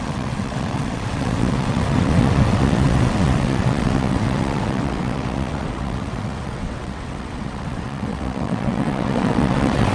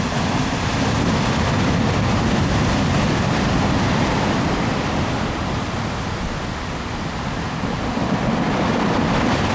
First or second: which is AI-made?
first